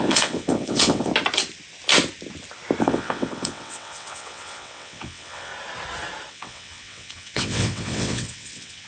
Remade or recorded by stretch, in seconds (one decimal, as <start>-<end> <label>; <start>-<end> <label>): 0.0-1.1 remade; 1.1-2.8 recorded; 2.8-5.5 remade; 5.5-6.3 recorded; 6.3-8.9 remade

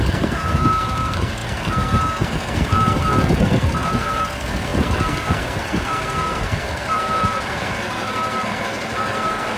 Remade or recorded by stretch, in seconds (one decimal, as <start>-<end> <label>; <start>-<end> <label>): 0.0-9.6 remade

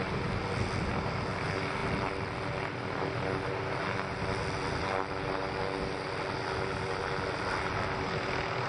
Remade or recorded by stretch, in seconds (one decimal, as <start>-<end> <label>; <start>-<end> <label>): 0.0-8.7 recorded